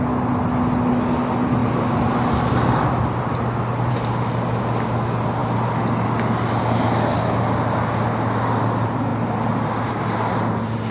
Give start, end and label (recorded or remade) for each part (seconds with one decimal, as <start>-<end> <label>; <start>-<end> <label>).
0.0-10.9 recorded